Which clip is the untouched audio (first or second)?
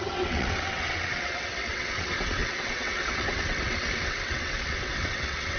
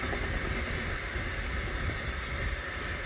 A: second